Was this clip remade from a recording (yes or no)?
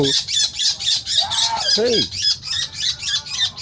no